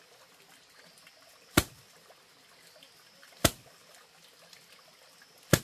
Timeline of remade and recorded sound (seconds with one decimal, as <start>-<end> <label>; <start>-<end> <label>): 0.0-5.6 recorded